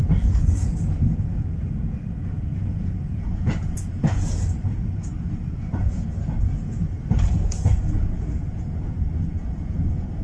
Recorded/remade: remade